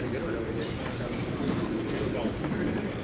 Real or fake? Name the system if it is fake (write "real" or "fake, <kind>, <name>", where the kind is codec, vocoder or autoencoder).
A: fake, vocoder, BigVGAN v2